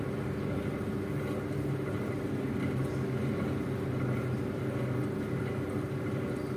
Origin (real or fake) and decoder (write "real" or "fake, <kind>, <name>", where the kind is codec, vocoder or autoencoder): fake, vocoder, BigVGAN v2